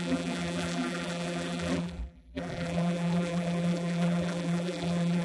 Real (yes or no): no